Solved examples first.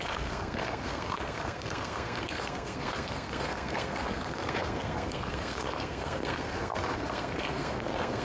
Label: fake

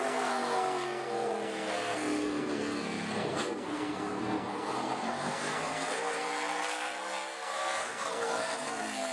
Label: fake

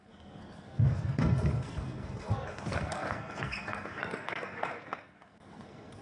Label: fake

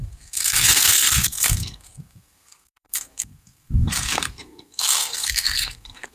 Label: fake